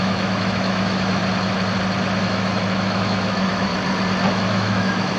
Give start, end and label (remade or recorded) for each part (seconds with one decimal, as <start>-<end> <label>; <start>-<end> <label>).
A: 0.0-1.2 remade; 1.2-2.2 recorded; 2.2-3.7 remade; 3.7-4.3 recorded; 4.3-5.2 remade